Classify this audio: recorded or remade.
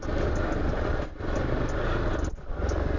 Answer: recorded